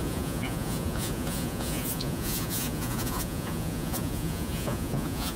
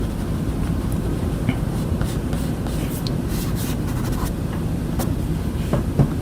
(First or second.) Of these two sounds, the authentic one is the second